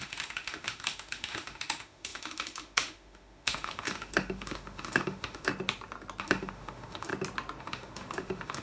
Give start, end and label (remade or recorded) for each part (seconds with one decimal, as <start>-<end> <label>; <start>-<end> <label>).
0.0-5.5 remade; 5.5-6.2 recorded; 6.2-7.1 remade; 7.1-7.6 recorded; 7.6-8.6 remade